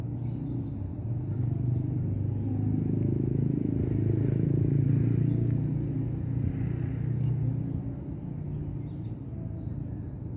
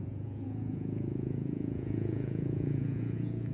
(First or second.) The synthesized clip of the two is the second